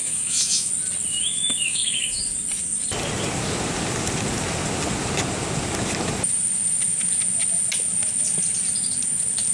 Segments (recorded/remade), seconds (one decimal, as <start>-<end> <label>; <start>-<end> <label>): 0.0-0.7 remade; 0.7-1.1 recorded; 1.1-2.2 remade; 2.2-9.5 recorded